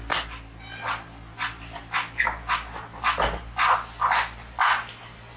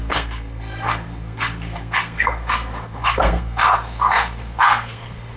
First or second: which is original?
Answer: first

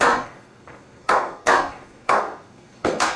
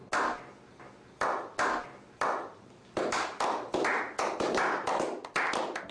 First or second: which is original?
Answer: second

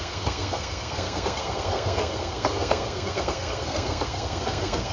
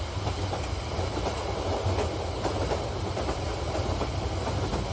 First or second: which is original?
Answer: second